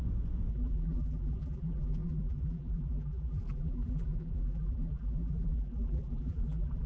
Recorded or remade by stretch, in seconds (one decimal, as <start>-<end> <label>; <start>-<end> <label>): 0.0-0.5 recorded; 0.5-6.9 remade